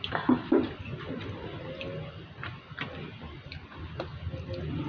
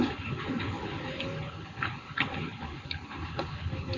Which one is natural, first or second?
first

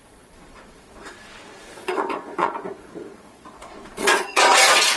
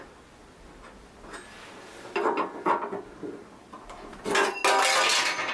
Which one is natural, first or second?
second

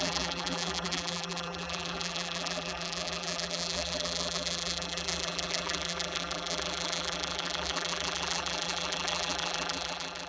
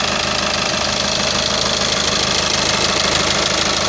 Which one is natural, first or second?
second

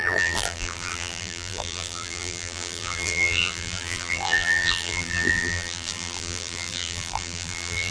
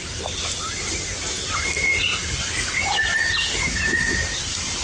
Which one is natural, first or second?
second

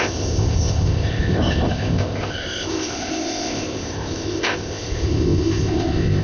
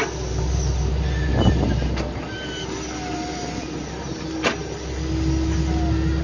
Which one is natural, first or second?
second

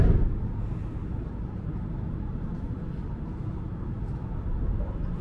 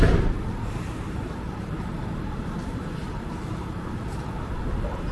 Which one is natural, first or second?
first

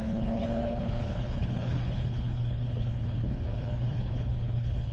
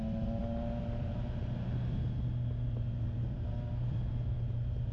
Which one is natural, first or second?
second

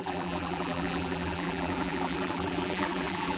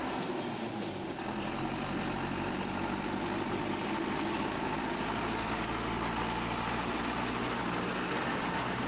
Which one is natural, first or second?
second